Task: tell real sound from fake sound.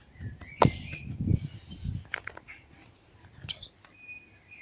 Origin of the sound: real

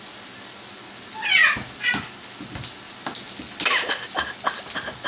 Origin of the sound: real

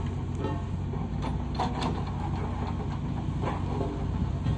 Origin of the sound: real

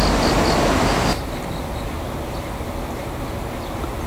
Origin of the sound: real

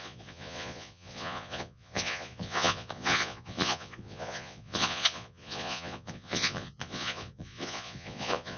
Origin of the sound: fake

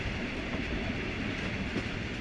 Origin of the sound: real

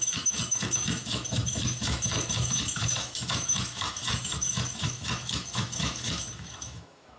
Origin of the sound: fake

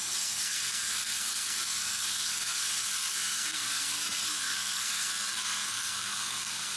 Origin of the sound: fake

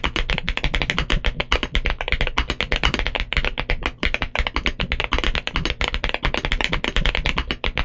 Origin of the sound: real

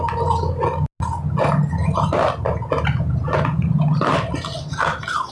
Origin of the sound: real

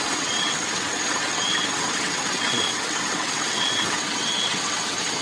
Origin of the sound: fake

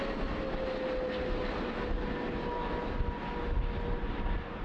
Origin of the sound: real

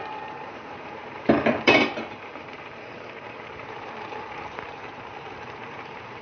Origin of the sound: fake